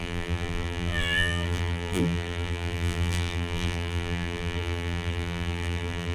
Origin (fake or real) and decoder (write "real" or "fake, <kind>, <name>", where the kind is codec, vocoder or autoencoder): fake, vocoder, BigVGAN v2